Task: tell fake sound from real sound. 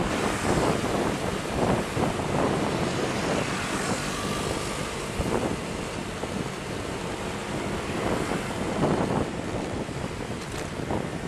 fake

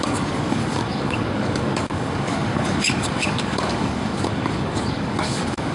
fake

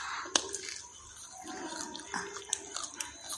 real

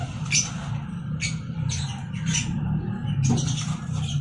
real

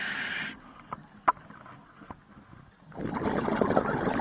real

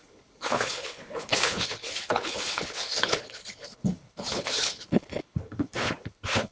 fake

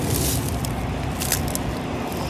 real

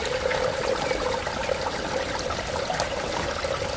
real